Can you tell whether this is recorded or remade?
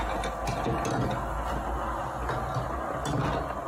recorded